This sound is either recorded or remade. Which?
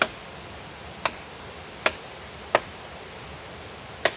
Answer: recorded